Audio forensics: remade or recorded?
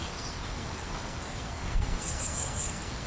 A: remade